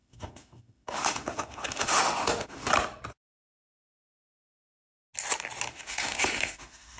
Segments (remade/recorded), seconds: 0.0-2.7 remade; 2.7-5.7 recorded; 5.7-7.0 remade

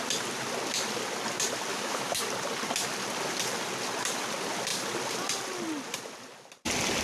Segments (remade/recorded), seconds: 0.0-1.7 recorded; 1.7-2.2 remade; 2.2-7.0 recorded

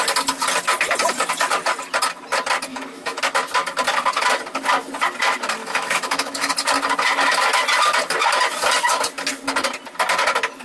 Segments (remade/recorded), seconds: 0.0-2.7 recorded; 2.7-3.2 remade; 3.2-5.6 recorded; 5.6-6.5 remade; 6.5-10.6 recorded

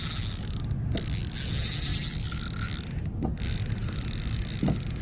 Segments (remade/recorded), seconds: 0.0-5.0 recorded

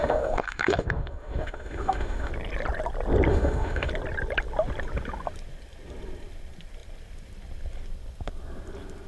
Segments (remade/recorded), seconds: 0.0-2.3 remade; 2.3-3.3 recorded; 3.3-3.9 remade; 3.9-9.1 recorded

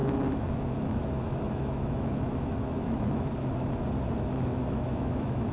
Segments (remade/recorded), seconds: 0.0-3.3 remade; 3.3-4.5 recorded; 4.5-5.5 remade

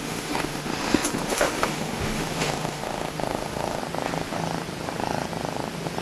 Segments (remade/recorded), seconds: 0.0-3.8 remade; 3.8-6.0 recorded

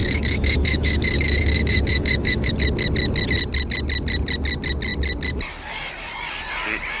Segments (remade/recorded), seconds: 0.0-2.5 remade; 2.5-7.0 recorded